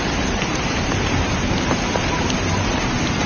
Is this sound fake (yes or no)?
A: yes